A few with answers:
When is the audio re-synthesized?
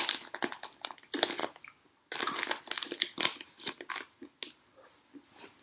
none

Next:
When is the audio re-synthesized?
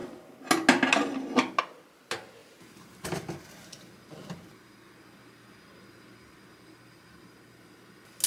2.4-3.1 (vocoder, BigVGAN v2)